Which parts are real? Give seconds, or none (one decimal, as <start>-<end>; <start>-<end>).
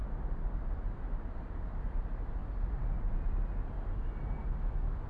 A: 0.0-1.6; 2.4-5.1